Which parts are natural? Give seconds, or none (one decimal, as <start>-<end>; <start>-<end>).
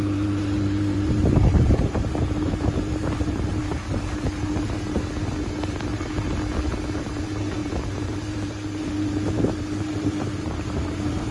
3.6-7.0